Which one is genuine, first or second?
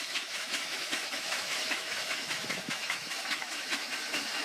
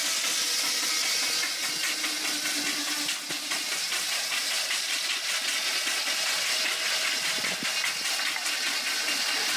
second